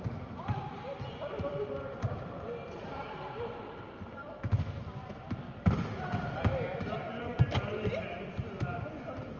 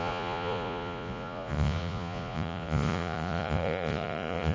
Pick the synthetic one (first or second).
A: second